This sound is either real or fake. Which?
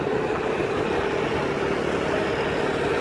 real